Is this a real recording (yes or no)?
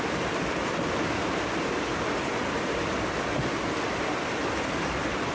yes